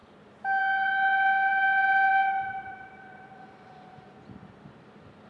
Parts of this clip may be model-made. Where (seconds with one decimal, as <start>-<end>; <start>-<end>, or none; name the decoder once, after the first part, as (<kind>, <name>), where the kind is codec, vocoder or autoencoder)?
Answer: none